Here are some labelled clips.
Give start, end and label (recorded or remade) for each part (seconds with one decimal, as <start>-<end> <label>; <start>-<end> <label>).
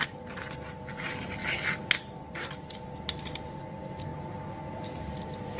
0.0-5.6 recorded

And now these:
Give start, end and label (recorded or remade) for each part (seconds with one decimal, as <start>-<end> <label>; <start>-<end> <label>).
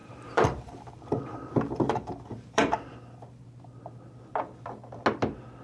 0.0-3.4 remade; 3.4-5.6 recorded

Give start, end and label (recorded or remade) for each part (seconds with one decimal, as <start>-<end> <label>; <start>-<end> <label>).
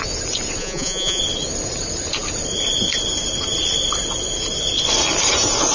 0.0-0.6 recorded; 0.6-1.2 remade; 1.2-5.7 recorded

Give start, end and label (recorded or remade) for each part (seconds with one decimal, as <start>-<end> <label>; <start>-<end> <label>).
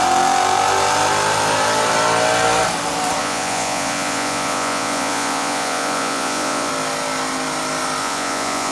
0.0-3.2 recorded; 3.2-6.7 remade; 6.7-8.0 recorded; 8.0-8.7 remade